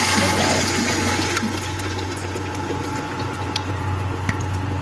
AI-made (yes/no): yes